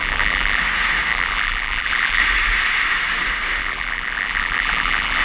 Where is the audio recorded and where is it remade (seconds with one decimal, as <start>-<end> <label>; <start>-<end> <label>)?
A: 0.0-0.6 remade; 0.6-1.1 recorded; 1.1-2.2 remade; 2.2-3.6 recorded; 3.6-5.2 remade